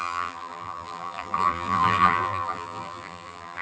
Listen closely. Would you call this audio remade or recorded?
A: remade